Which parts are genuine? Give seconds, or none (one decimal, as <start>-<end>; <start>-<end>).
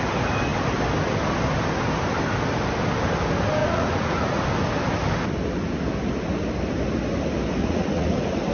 0.0-3.6; 4.4-7.6; 8.1-8.5